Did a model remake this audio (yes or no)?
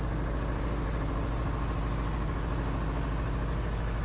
no